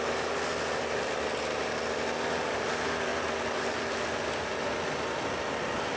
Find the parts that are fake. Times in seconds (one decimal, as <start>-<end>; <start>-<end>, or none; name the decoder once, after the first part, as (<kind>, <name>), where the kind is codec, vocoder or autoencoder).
none